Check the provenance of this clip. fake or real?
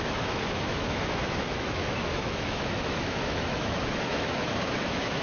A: fake